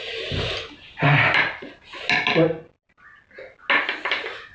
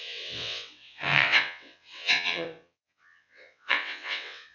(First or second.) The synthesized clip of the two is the second